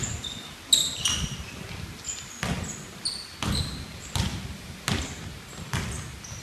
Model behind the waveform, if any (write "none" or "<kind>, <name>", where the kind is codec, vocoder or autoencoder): none